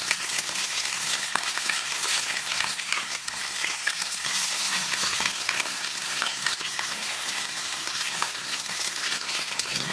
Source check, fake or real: fake